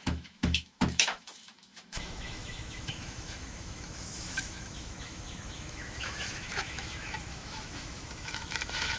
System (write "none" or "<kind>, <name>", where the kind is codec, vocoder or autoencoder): autoencoder, DAC-VAE